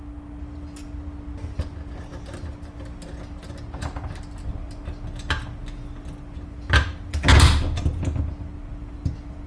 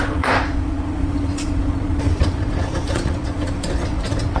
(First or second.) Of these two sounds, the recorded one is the first